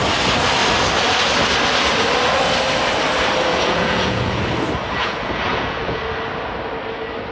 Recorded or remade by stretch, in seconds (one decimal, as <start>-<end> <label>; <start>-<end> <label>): 0.0-3.5 recorded; 3.5-4.4 remade; 4.4-5.0 recorded; 5.0-6.0 remade; 6.0-7.3 recorded

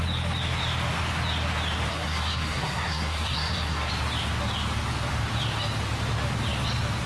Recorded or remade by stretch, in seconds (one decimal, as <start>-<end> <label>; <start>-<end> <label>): 0.0-1.9 recorded; 1.9-3.9 remade; 3.9-7.1 recorded

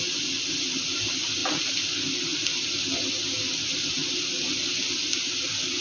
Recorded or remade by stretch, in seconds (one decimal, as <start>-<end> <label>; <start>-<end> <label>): 0.0-5.8 recorded

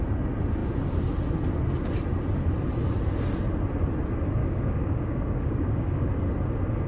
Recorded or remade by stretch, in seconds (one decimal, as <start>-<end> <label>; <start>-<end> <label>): 0.0-4.4 recorded; 4.4-6.1 remade; 6.1-6.9 recorded

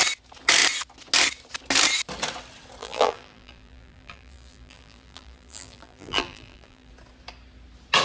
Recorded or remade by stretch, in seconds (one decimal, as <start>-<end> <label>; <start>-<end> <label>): 0.0-2.8 recorded; 2.8-6.9 remade; 6.9-8.0 recorded